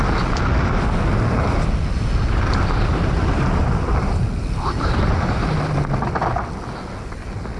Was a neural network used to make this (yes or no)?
no